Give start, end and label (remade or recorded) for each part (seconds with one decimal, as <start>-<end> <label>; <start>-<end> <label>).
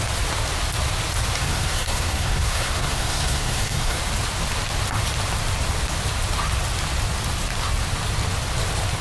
0.0-1.4 recorded; 1.4-4.0 remade; 4.0-9.0 recorded